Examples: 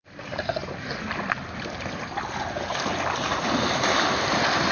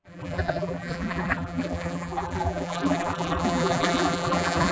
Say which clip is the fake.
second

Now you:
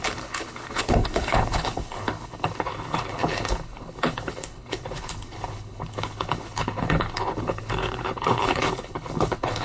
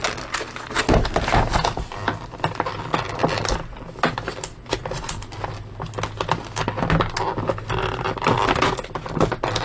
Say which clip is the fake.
first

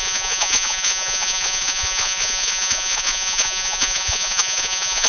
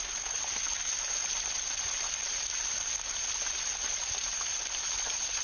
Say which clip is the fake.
first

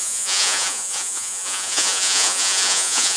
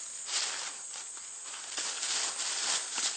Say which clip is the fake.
first